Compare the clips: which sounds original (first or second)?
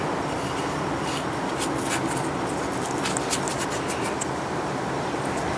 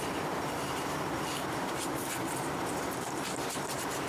first